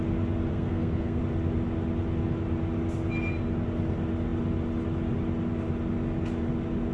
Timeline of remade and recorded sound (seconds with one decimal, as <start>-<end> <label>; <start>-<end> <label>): 0.0-0.5 recorded; 0.5-1.2 remade; 1.2-6.9 recorded